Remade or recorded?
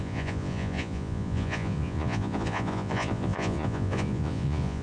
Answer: remade